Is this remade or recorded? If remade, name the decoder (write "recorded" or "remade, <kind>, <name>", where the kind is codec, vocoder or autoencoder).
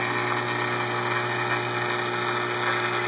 recorded